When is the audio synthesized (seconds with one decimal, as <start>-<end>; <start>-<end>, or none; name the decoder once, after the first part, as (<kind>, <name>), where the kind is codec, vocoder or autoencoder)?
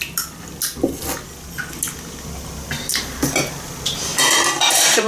4.1-5.1 (vocoder, BigVGAN v2)